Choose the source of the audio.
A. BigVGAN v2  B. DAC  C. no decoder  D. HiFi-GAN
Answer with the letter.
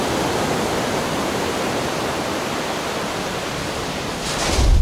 C